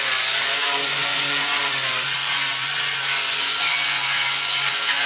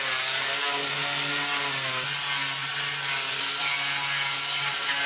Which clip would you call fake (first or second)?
first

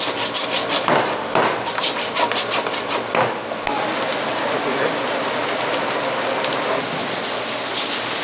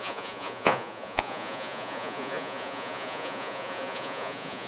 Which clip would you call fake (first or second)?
second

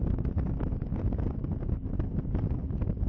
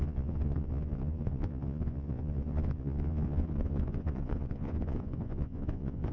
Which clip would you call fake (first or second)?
second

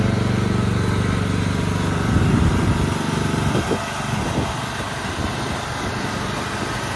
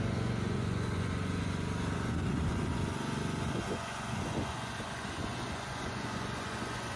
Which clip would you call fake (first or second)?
second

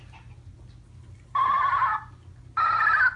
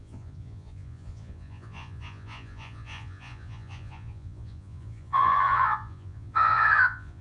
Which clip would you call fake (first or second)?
second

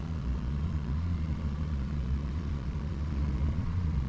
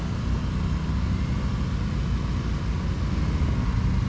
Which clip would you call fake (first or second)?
first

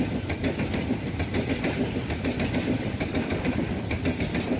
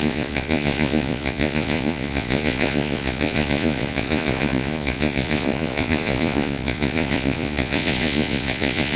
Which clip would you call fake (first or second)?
second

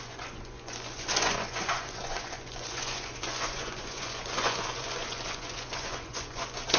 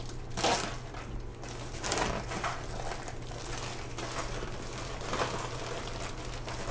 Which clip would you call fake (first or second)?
first